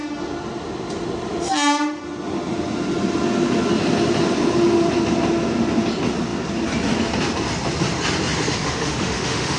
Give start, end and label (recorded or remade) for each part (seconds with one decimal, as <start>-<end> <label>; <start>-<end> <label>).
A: 0.0-8.6 recorded; 8.6-9.6 remade